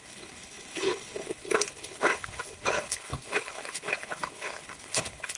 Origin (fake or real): fake